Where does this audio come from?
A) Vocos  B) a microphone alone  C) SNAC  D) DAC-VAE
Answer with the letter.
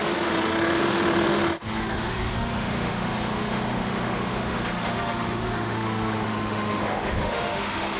D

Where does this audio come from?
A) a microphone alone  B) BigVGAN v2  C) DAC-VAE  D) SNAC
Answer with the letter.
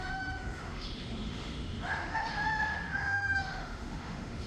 C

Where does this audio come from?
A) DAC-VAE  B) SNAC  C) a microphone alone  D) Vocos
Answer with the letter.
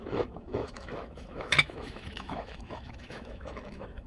A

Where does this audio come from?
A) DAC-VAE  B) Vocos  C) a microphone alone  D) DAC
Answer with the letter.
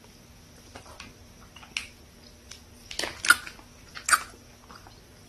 C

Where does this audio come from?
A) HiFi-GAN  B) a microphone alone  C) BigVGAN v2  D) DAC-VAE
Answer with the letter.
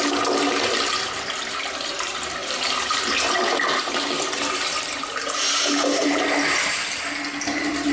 B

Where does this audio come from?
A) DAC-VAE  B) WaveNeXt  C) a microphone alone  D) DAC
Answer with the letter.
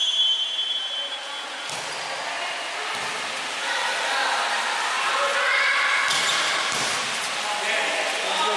C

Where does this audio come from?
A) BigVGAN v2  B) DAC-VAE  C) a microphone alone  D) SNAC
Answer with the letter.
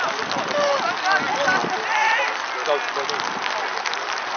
C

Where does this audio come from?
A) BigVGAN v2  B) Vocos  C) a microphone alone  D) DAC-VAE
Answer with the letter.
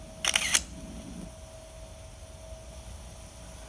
C